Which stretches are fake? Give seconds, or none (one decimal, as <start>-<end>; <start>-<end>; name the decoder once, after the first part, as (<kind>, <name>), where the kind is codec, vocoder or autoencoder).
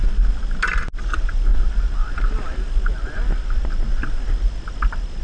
none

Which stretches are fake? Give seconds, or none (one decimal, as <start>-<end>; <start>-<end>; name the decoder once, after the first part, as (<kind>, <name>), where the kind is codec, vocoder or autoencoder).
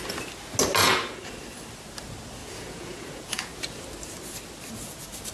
0.8-1.3 (vocoder, Vocos); 2.4-3.6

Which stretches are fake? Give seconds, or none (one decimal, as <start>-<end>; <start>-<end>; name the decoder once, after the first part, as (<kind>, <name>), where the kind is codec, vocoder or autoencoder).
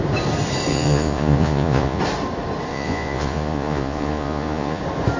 0.7-2.0 (vocoder, Vocos); 2.7-4.8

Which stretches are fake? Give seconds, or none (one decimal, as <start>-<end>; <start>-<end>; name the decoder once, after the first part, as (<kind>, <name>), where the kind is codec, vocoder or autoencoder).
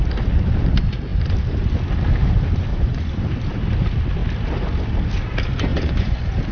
2.7-3.2 (vocoder, Vocos); 5.7-6.5